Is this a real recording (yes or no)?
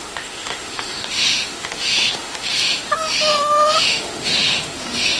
no